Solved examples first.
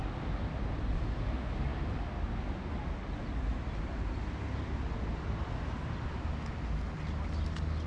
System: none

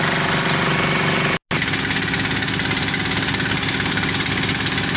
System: none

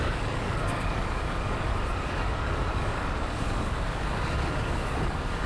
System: codec, DAC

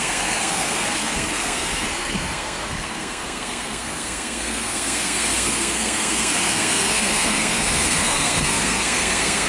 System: codec, SNAC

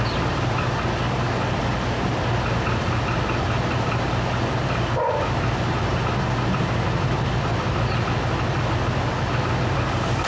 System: none